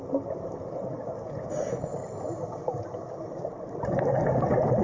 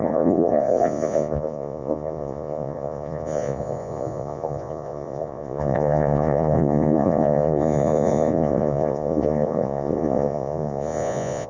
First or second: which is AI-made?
second